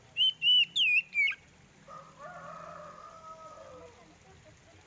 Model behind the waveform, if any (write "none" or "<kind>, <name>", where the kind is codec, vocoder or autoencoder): none